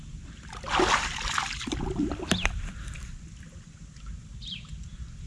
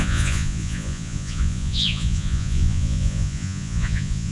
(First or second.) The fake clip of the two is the second